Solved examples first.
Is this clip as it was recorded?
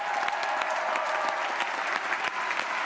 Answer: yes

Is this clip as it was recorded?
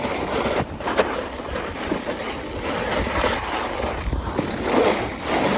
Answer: yes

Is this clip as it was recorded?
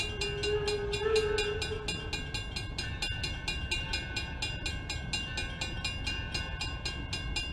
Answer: yes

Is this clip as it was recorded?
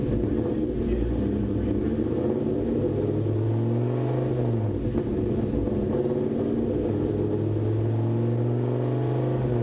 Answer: yes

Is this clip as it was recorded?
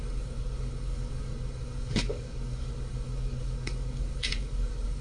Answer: no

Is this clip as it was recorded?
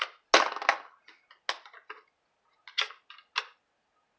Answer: yes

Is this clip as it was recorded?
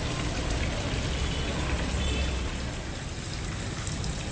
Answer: yes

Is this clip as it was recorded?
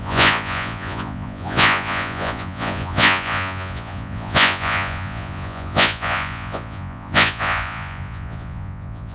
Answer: no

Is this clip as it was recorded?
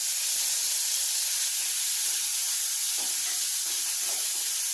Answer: yes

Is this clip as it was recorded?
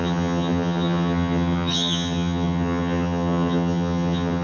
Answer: no